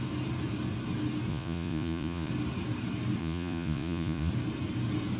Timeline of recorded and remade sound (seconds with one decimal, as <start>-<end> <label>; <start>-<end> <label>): 0.0-1.3 recorded; 1.3-2.3 remade; 2.3-3.2 recorded; 3.2-4.3 remade; 4.3-5.2 recorded